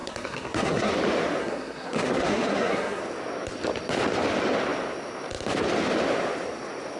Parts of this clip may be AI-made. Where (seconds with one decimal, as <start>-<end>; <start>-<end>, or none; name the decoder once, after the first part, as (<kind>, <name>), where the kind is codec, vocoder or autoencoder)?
0.0-0.9 (codec, SNAC); 1.4-3.0